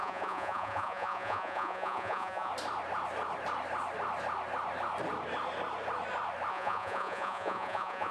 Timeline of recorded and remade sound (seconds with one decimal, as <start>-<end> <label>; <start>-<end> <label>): 0.0-2.5 remade; 2.5-6.5 recorded; 6.5-8.1 remade

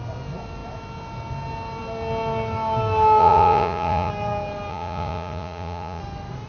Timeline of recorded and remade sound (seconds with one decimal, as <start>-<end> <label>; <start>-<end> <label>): 0.0-3.2 recorded; 3.2-4.1 remade; 4.1-4.7 recorded; 4.7-6.0 remade; 6.0-6.5 recorded

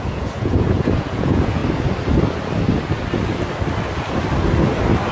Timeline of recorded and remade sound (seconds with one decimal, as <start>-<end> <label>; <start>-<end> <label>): 0.0-1.6 remade; 1.6-5.1 recorded

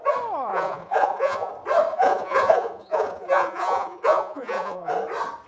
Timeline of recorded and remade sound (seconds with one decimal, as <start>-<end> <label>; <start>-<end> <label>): 0.0-0.5 recorded; 0.5-1.5 remade; 1.5-1.9 recorded; 1.9-4.9 remade; 4.9-5.5 recorded

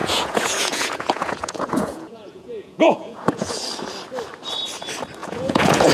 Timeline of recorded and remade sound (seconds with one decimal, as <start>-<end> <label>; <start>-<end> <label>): 0.0-3.5 remade; 3.5-5.2 recorded; 5.2-5.9 remade

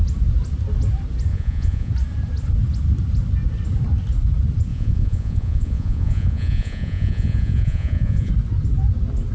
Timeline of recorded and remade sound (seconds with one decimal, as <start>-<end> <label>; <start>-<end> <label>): 0.0-1.3 recorded; 1.3-1.9 remade; 1.9-4.7 recorded; 4.7-8.3 remade; 8.3-9.3 recorded